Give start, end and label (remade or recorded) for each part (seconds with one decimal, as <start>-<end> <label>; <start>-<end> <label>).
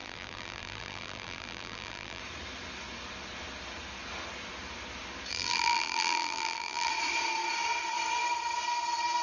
0.0-2.2 remade; 2.2-5.3 recorded; 5.3-6.9 remade; 6.9-9.2 recorded